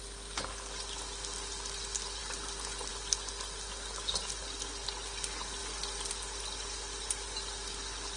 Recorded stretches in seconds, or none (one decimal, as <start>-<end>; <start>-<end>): 0.0-8.2